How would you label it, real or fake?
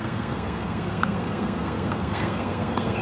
fake